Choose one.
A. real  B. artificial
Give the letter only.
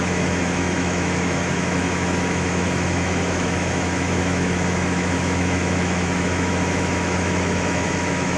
B